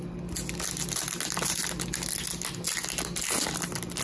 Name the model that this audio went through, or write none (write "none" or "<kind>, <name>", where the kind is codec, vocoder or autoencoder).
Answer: none